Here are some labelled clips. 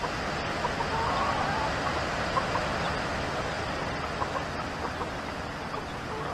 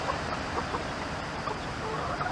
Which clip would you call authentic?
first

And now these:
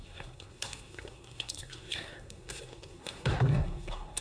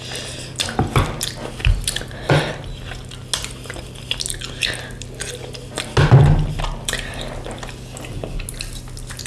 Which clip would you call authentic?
second